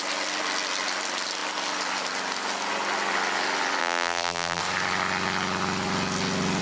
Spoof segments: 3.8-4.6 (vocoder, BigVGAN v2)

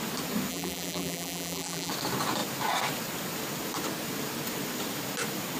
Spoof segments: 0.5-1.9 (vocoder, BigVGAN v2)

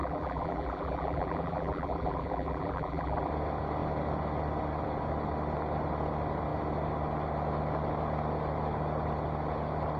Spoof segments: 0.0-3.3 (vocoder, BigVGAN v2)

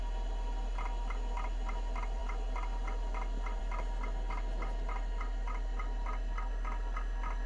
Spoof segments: none

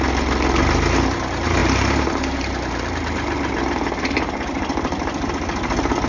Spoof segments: 1.6-5.3 (vocoder, BigVGAN v2)

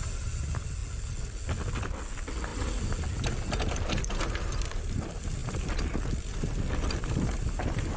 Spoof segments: none